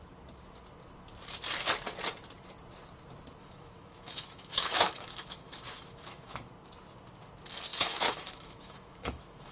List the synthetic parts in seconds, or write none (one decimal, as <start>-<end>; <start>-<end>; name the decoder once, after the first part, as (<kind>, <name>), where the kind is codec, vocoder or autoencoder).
3.4-6.5 (autoencoder, DAC-VAE); 7.7-9.5